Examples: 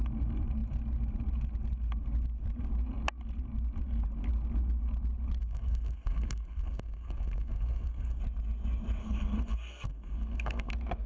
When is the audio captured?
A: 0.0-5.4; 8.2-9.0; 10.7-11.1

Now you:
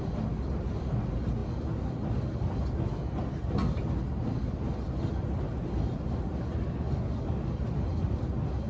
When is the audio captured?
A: 0.0-8.7

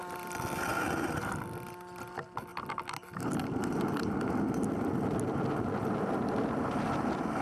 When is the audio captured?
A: 0.0-7.4

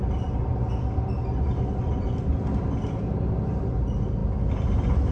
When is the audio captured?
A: 0.0-5.1

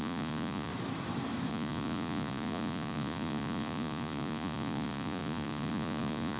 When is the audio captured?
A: 0.7-1.5

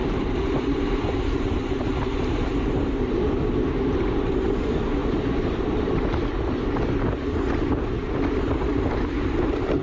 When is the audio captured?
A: 3.3-5.0; 6.2-9.8